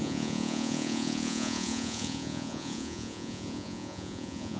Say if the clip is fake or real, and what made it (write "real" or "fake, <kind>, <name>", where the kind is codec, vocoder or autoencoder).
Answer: fake, vocoder, Vocos